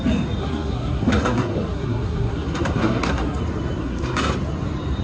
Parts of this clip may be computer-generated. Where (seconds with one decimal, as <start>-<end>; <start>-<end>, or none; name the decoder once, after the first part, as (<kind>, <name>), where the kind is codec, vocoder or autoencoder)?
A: 0.4-3.4 (codec, SNAC); 3.8-4.3